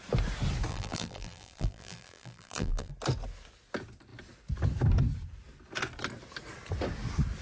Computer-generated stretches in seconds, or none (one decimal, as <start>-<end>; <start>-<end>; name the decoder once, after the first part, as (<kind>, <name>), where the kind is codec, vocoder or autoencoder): 0.7-2.9 (vocoder, BigVGAN v2)